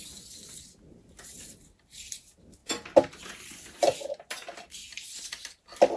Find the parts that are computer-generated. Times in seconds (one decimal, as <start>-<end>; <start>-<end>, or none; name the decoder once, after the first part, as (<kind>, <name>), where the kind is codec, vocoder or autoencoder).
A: none